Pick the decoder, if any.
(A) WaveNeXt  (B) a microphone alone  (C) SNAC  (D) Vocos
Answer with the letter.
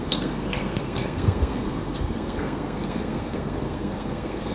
C